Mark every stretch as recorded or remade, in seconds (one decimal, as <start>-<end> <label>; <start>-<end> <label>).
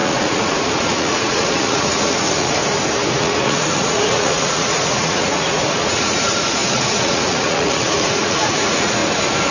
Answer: 0.0-2.6 remade; 2.6-3.1 recorded; 3.1-9.0 remade; 9.0-9.5 recorded